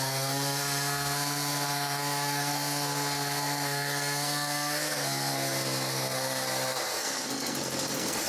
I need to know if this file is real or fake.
fake